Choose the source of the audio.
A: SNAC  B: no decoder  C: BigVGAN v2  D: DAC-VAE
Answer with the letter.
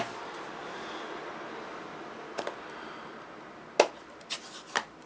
B